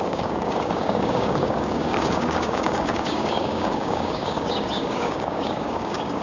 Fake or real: fake